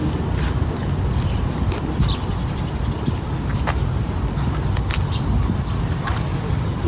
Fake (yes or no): no